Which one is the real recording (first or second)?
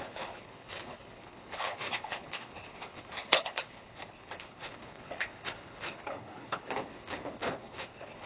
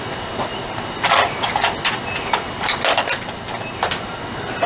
second